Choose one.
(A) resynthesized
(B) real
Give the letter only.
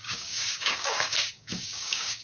A